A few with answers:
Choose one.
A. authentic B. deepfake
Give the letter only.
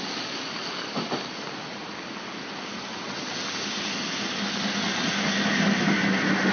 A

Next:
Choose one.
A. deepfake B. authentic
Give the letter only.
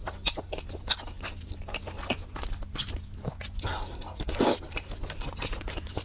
B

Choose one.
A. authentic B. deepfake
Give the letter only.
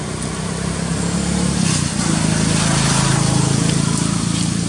A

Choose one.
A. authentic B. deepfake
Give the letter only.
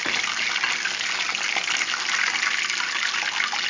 A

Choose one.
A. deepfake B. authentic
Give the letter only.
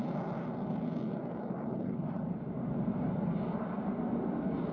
B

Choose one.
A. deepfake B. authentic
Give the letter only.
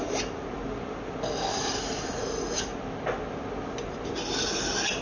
B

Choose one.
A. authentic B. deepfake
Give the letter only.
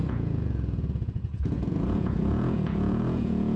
B